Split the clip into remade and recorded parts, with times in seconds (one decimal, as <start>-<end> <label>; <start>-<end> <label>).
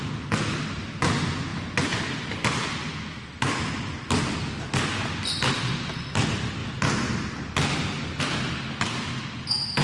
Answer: 0.0-9.8 recorded